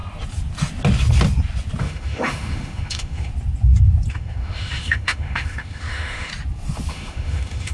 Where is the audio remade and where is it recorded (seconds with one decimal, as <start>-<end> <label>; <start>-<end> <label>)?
0.0-1.8 recorded; 1.8-3.3 remade; 3.3-4.1 recorded; 4.1-6.3 remade; 6.3-6.9 recorded; 6.9-7.7 remade

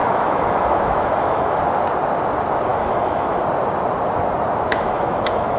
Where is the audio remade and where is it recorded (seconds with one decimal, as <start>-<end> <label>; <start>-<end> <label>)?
0.0-1.6 remade; 1.6-2.7 recorded; 2.7-3.4 remade; 3.4-4.7 recorded; 4.7-5.6 remade

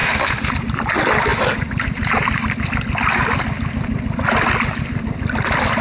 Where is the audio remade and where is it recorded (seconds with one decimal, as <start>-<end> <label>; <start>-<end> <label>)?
0.0-0.5 remade; 0.5-5.8 recorded

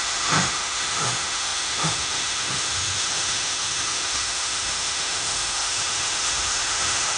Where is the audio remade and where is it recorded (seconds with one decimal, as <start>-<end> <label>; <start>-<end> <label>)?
0.0-7.2 remade

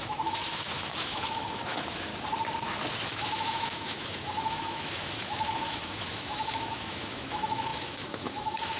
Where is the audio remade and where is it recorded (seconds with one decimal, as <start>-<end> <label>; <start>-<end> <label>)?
0.0-2.1 remade; 2.1-3.1 recorded; 3.1-8.8 remade

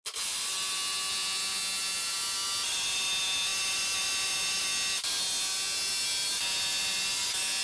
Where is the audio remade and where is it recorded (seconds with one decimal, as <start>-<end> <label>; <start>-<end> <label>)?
0.0-7.6 recorded

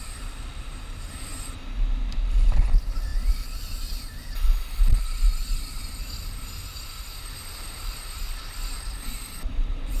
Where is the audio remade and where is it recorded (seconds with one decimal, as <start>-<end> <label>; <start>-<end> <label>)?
0.0-10.0 recorded

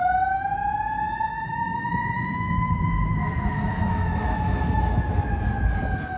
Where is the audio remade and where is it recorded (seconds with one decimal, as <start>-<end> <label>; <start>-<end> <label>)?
0.0-1.3 recorded; 1.3-5.0 remade; 5.0-6.2 recorded